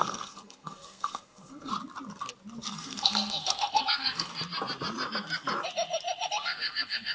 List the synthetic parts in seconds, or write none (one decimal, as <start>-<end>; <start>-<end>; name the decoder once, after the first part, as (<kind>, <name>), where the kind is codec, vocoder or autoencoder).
0.0-1.7 (codec, SNAC); 2.7-4.3; 6.3-7.1